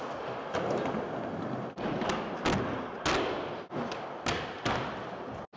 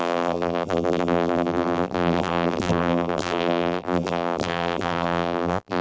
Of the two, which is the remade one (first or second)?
second